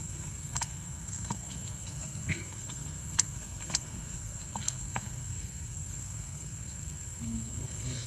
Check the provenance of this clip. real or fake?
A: fake